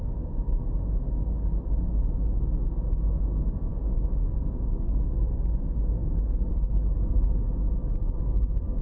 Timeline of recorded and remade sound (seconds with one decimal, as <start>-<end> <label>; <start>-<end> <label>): 0.0-1.5 remade; 1.5-3.1 recorded; 3.1-8.8 remade